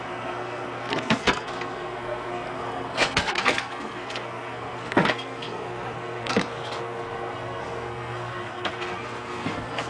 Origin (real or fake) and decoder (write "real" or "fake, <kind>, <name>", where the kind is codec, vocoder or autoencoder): fake, codec, SNAC